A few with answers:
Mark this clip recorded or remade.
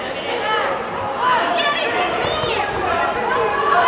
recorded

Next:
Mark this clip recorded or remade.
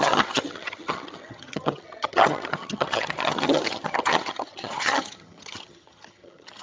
remade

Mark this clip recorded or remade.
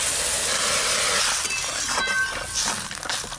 recorded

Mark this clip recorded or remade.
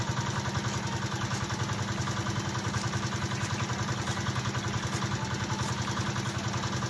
recorded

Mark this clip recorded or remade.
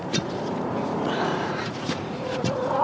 remade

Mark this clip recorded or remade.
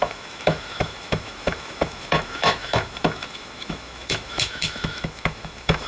remade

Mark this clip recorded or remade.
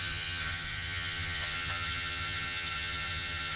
remade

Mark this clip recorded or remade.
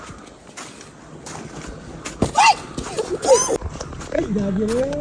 recorded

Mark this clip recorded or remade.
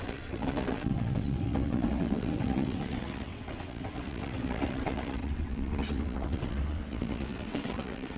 remade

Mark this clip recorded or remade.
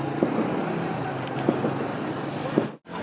recorded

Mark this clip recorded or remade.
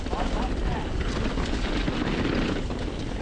recorded